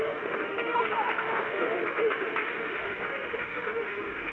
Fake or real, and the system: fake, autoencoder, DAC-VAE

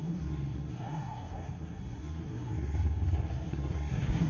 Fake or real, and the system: fake, codec, SNAC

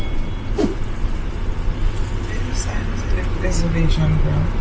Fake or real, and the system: real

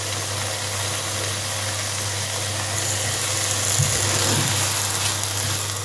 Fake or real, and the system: real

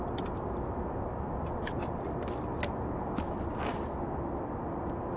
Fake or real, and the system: real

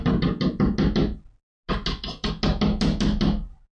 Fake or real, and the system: real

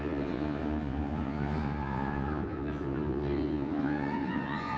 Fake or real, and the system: fake, vocoder, Vocos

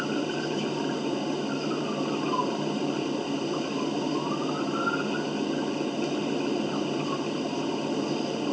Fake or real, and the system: real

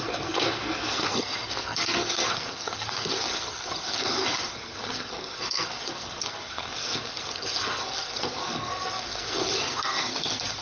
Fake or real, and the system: fake, codec, SNAC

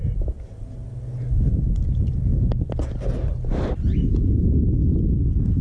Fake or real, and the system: real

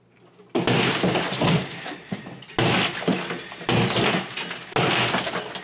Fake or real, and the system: real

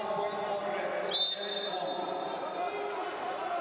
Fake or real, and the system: real